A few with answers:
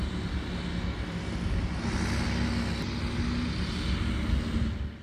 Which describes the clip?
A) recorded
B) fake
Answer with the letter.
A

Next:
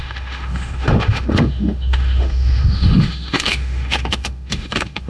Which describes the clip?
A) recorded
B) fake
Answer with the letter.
B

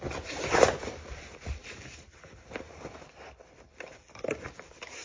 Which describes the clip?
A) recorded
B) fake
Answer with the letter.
A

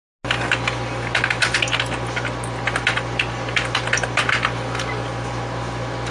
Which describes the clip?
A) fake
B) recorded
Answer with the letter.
B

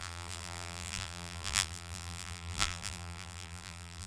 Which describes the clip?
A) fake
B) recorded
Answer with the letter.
A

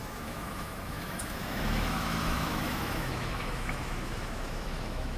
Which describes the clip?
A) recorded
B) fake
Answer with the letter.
B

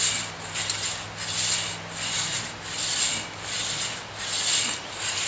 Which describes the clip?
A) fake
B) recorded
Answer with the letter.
B